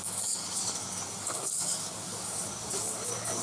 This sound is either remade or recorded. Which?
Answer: remade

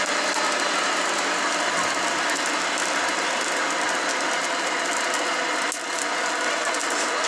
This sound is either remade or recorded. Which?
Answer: recorded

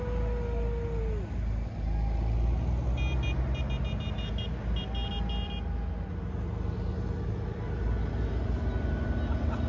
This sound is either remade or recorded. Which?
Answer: recorded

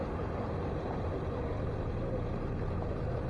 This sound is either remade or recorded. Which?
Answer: recorded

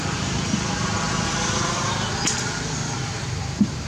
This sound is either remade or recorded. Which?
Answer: recorded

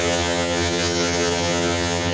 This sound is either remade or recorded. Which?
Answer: remade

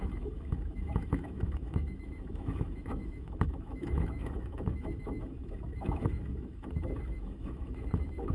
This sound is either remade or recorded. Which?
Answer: remade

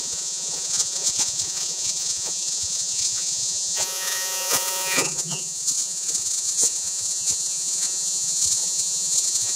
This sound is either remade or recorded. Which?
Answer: remade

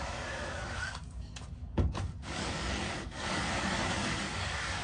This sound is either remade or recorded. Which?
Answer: remade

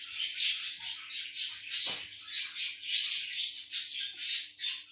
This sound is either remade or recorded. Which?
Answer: recorded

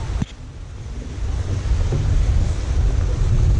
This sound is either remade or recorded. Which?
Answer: recorded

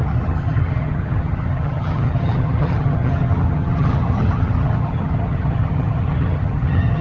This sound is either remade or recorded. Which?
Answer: remade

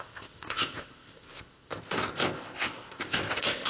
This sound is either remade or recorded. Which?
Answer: remade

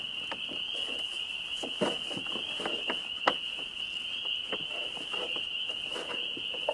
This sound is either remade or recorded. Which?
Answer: recorded